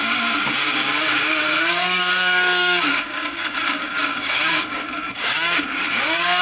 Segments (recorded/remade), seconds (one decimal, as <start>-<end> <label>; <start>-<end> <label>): 0.0-6.4 remade